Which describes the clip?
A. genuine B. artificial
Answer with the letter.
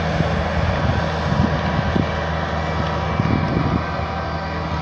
A